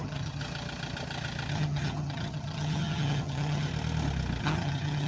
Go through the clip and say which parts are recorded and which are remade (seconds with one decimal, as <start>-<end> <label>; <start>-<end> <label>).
0.0-0.4 remade; 0.4-1.5 recorded; 1.5-3.7 remade; 3.7-4.4 recorded; 4.4-5.1 remade